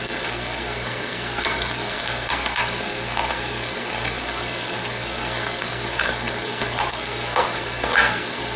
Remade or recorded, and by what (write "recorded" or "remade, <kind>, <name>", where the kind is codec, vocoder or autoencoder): remade, codec, SNAC